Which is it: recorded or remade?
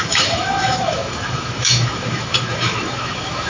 remade